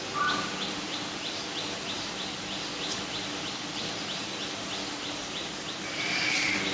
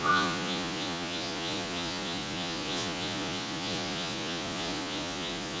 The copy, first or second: second